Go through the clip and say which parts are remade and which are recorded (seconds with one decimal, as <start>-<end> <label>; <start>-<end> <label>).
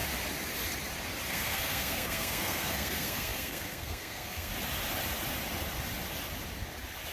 0.0-1.3 recorded; 1.3-4.5 remade; 4.5-7.1 recorded